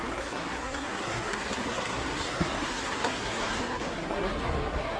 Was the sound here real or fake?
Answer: fake